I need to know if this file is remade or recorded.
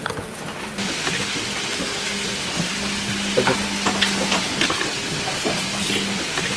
recorded